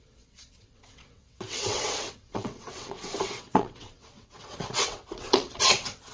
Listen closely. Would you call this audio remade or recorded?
remade